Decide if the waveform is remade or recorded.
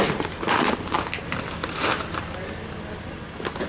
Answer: recorded